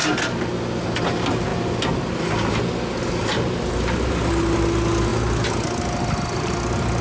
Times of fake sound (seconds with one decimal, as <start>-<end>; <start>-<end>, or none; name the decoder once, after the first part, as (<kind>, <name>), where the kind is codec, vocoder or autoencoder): none